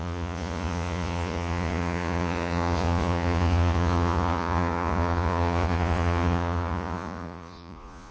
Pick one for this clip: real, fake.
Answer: fake